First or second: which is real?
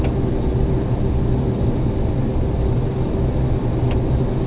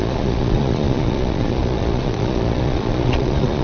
first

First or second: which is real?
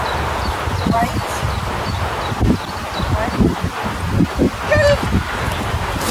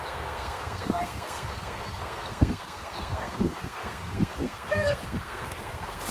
first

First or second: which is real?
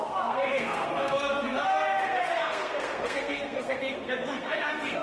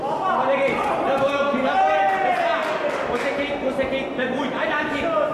second